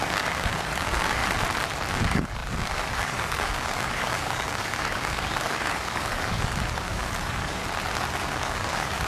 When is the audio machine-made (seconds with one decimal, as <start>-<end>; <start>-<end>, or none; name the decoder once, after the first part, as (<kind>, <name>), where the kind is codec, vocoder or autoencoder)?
0.0-1.2 (codec, DAC); 1.9-7.6; 8.2-9.1